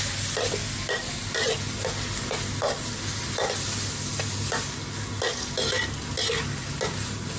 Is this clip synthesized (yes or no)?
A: no